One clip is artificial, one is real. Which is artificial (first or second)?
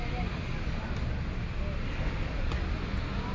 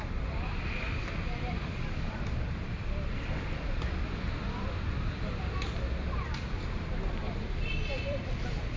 second